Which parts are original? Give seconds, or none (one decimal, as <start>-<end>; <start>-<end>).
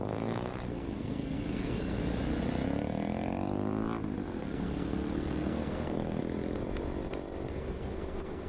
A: 2.0-4.4; 6.2-7.5